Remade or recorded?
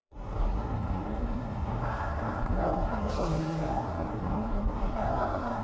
remade